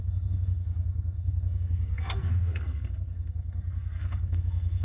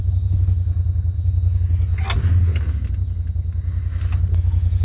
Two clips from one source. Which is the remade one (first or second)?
first